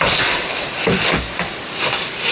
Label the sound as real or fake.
real